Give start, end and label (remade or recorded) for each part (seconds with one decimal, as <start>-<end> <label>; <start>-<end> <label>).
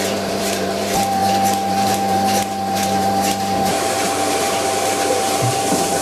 0.0-6.0 remade